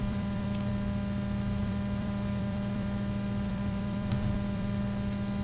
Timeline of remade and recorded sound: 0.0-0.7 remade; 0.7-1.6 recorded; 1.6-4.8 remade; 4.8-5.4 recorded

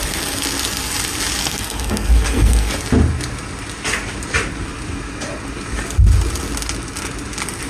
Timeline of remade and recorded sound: 0.0-1.4 recorded; 1.4-2.7 remade; 2.7-7.7 recorded

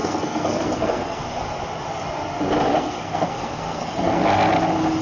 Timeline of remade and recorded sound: 0.0-1.2 remade; 1.2-2.7 recorded; 2.7-4.3 remade; 4.3-5.0 recorded